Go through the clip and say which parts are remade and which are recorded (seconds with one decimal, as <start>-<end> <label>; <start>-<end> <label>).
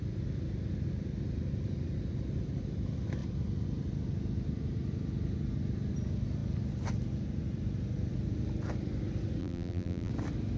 0.0-9.4 recorded; 9.4-10.1 remade; 10.1-10.6 recorded